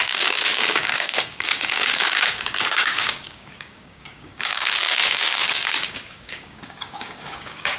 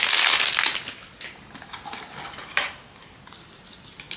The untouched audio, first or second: second